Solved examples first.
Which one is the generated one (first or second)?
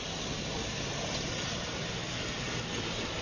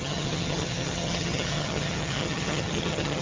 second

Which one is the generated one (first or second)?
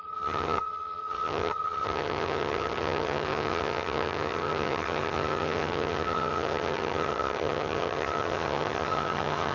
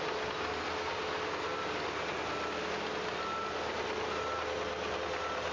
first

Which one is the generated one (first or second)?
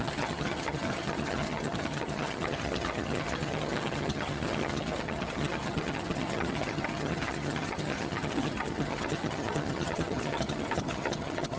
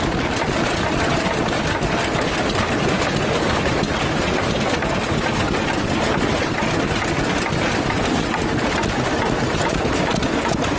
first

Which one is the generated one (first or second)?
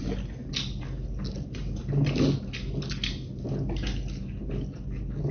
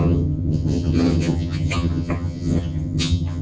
second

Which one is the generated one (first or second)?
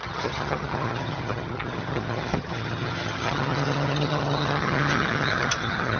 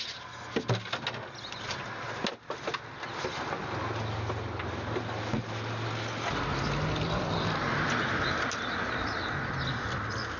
first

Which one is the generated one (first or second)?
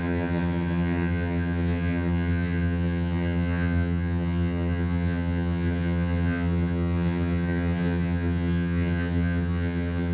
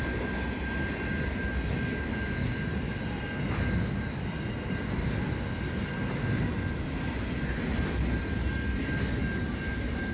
first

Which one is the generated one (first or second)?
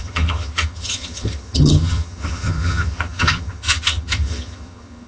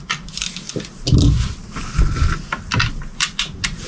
first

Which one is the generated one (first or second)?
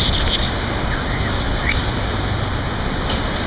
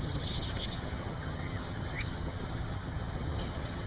second